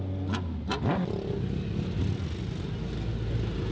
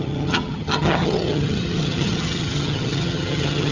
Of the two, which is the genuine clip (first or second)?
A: first